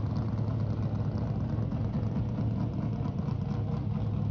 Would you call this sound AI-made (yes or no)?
no